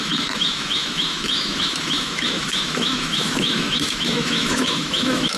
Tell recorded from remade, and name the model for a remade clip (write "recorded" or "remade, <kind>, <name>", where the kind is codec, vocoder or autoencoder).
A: remade, autoencoder, DAC-VAE